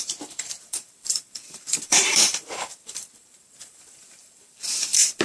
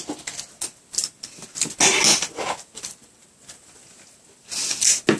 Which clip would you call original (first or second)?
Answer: second